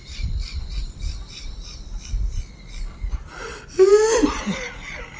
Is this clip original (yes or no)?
no